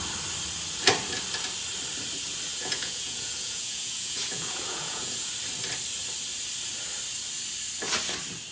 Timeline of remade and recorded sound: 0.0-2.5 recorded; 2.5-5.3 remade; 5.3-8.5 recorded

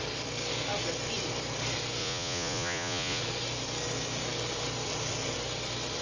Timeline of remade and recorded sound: 0.0-2.0 recorded; 2.0-3.2 remade; 3.2-6.0 recorded

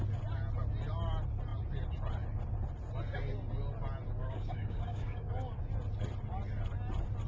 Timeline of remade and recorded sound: 0.0-4.2 recorded; 4.2-5.6 remade; 5.6-7.3 recorded

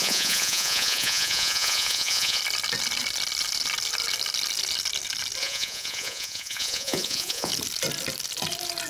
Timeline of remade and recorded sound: 0.0-2.4 remade; 2.4-5.4 recorded; 5.4-7.5 remade; 7.5-8.9 recorded

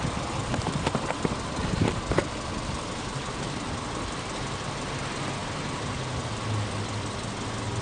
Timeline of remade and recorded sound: 0.0-7.8 recorded

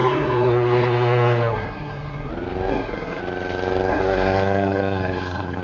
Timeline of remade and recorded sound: 0.0-2.3 remade; 2.3-2.7 recorded; 2.7-3.2 remade; 3.2-3.9 recorded; 3.9-5.6 remade

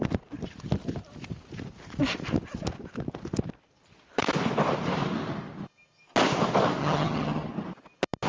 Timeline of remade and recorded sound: 0.0-6.8 recorded; 6.8-7.5 remade; 7.5-8.3 recorded

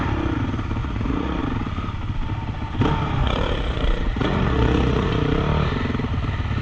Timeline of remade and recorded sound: 0.0-0.8 recorded; 0.8-1.4 remade; 1.4-3.2 recorded; 3.2-5.1 remade; 5.1-6.6 recorded